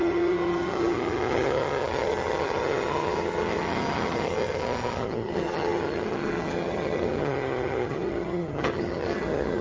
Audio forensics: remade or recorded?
remade